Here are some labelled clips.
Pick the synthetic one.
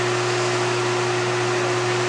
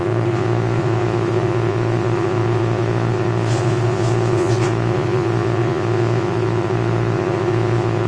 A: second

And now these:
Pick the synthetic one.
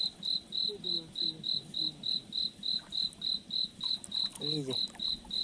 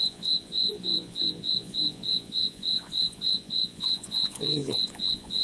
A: second